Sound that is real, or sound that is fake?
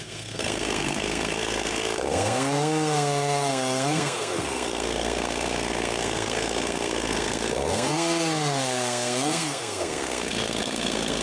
fake